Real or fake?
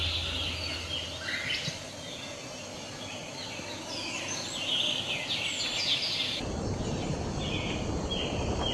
real